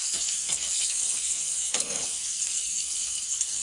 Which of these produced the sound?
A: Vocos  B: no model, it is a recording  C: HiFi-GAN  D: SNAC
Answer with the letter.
D